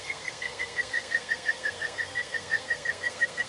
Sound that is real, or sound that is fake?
fake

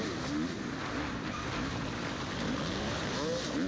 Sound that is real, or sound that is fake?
real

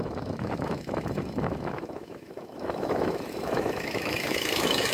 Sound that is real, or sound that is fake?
fake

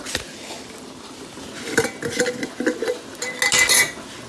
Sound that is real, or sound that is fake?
real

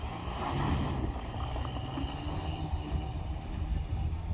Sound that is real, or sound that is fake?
real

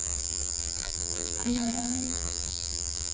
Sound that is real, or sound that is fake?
fake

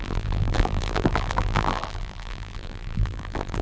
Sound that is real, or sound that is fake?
fake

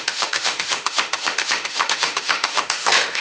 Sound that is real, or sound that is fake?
fake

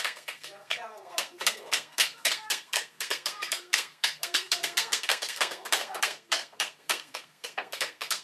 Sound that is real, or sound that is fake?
fake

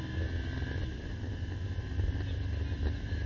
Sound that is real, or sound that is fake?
real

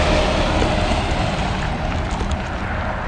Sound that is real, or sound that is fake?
real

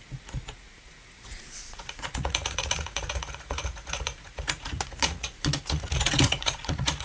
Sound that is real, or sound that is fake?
fake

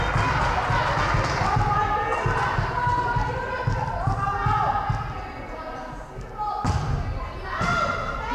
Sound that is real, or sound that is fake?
real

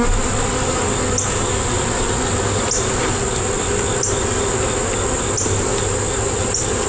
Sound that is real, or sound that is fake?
real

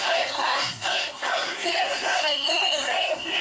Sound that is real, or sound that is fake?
fake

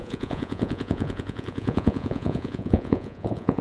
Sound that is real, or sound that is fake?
fake